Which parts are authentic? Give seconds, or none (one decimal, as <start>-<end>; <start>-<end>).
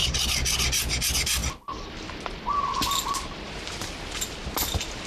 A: 0.0-1.4; 4.5-5.1